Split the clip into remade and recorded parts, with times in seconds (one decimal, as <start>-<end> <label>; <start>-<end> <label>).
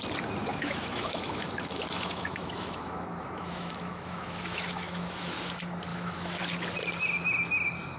0.0-0.5 recorded; 0.5-5.3 remade; 5.3-5.9 recorded; 5.9-6.4 remade; 6.4-8.0 recorded